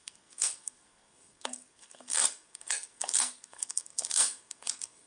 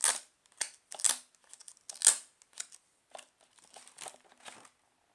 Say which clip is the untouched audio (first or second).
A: second